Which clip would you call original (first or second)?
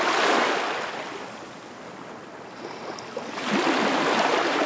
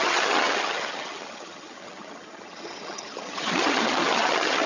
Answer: first